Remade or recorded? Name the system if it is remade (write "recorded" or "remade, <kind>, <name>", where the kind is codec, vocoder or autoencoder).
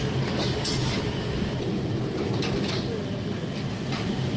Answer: recorded